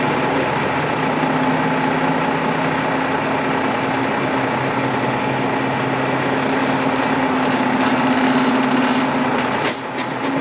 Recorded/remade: recorded